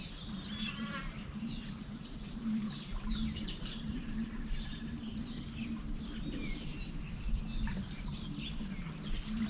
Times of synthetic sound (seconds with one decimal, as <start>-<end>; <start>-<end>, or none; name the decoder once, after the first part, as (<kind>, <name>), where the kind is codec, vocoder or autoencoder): 0.8-4.0 (vocoder, BigVGAN v2)